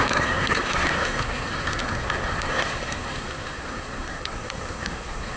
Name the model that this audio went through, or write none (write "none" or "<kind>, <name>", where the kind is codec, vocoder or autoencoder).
codec, SNAC